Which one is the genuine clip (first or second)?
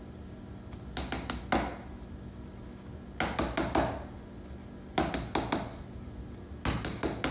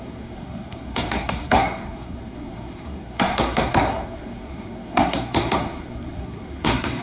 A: first